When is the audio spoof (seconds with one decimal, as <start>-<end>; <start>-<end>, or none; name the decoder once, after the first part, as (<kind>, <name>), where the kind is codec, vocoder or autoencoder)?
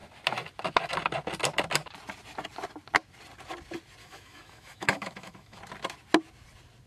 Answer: 4.0-5.6 (autoencoder, DAC-VAE)